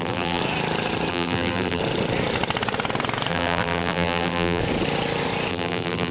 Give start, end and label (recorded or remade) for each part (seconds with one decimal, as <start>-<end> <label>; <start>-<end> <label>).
0.0-0.4 remade; 0.4-1.1 recorded; 1.1-1.8 remade; 1.8-3.3 recorded; 3.3-4.6 remade; 4.6-5.5 recorded; 5.5-6.1 remade